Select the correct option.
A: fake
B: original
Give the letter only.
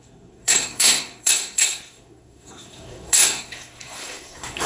A